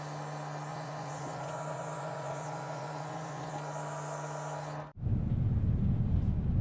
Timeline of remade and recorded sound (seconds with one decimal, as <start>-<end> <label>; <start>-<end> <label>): 0.0-0.7 recorded; 0.7-3.5 remade; 3.5-6.6 recorded